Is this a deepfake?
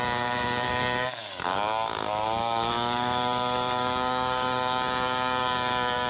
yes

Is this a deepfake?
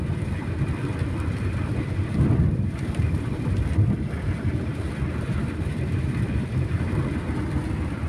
yes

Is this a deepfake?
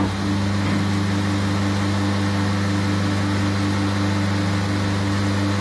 no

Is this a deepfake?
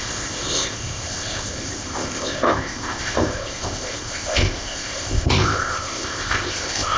yes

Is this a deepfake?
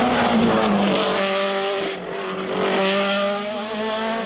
no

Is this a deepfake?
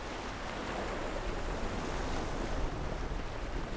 no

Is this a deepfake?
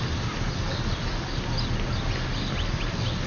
no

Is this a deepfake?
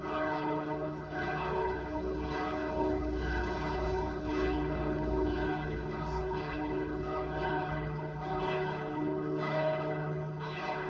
yes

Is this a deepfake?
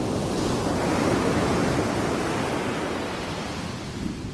no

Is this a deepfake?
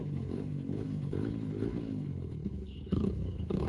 yes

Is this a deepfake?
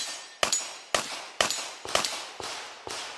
no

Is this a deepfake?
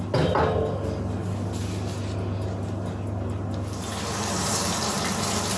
no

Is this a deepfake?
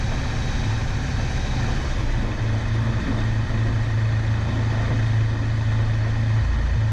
no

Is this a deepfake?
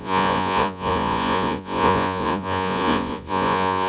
yes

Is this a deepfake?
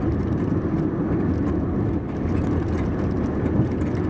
no